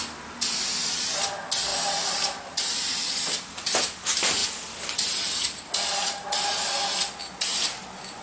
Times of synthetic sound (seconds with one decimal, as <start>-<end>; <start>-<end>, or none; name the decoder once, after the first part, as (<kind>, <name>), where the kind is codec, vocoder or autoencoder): 1.7-3.8 (vocoder, BigVGAN v2)